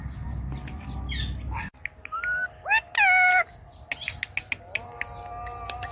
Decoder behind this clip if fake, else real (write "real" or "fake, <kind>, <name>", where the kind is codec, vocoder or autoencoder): real